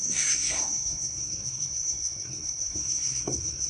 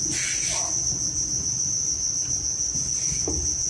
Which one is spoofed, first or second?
first